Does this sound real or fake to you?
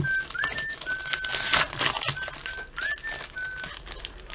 real